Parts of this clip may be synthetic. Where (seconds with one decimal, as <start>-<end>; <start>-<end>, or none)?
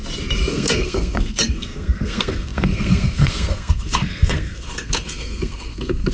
0.5-6.1